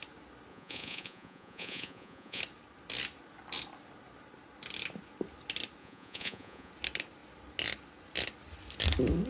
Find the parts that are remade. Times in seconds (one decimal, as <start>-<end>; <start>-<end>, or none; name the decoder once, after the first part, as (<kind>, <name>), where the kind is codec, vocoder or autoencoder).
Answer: 0.5-2.4 (vocoder, Vocos); 5.8-6.7